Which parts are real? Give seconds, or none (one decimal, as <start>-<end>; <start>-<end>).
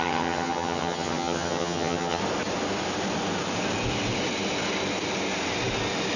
2.2-6.2